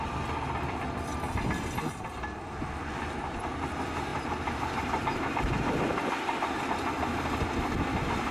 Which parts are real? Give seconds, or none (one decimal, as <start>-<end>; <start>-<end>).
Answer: 0.0-4.1; 6.6-8.3